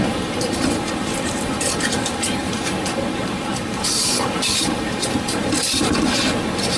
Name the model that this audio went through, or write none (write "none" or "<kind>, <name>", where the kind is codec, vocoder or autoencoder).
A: vocoder, BigVGAN v2